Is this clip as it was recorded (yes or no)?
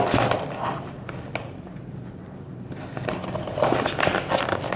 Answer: yes